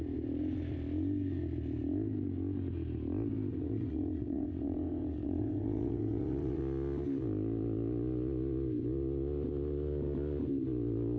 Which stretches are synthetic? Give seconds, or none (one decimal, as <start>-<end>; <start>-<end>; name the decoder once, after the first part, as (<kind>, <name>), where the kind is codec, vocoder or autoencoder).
3.5-6.6 (vocoder, WaveNeXt)